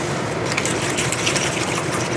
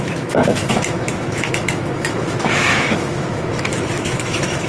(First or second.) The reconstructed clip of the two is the second